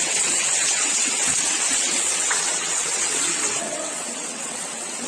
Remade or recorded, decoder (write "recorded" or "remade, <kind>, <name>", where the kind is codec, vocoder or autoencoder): remade, vocoder, WaveNeXt